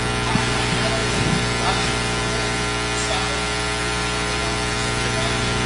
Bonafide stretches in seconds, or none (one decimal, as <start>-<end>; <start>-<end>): 0.0-5.7